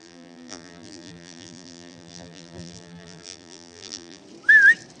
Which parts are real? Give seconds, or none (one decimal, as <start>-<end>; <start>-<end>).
4.2-5.0